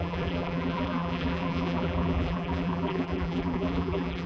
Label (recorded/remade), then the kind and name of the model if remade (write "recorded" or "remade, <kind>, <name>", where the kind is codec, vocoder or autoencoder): remade, vocoder, BigVGAN v2